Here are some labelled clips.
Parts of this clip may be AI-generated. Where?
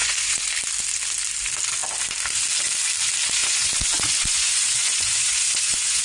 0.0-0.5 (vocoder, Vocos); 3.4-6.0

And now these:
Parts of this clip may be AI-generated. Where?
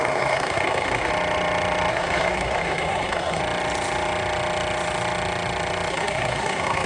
0.0-1.1 (codec, SNAC); 1.9-3.4; 5.9-6.9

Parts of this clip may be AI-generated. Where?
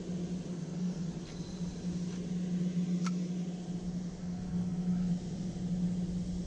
0.5-1.1 (codec, SNAC); 4.2-5.1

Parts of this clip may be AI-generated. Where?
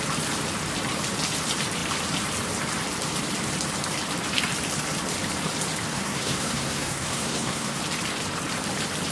5.9-7.8 (codec, SNAC)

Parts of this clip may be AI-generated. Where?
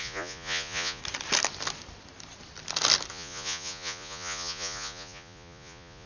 0.0-1.0 (vocoder, Vocos); 3.1-6.1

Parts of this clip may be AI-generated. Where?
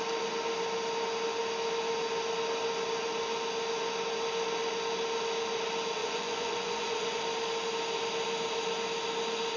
6.0-7.2 (vocoder, Vocos)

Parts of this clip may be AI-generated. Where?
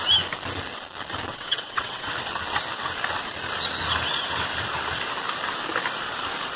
1.3-2.1 (vocoder, WaveNeXt)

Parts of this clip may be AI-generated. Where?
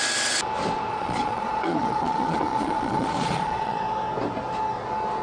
0.9-3.8 (vocoder, Vocos)